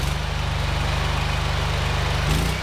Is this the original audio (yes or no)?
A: yes